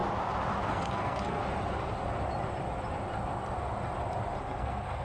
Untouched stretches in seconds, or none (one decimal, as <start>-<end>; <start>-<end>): 0.0-0.7; 1.4-4.4